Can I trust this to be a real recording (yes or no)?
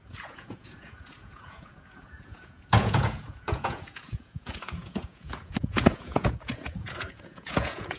no